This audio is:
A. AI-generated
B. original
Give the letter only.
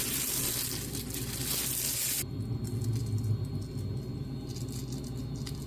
B